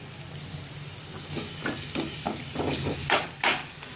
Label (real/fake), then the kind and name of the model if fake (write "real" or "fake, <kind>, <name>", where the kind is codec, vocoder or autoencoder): real